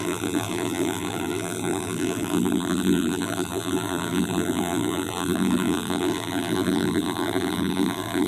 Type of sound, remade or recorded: remade